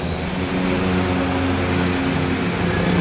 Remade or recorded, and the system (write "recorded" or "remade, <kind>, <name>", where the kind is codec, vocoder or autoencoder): recorded